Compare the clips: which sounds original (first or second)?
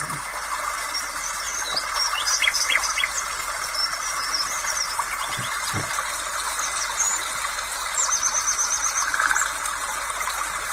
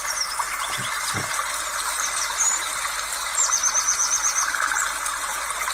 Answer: second